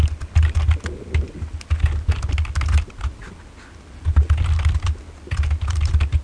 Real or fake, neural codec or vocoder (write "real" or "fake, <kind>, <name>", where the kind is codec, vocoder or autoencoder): real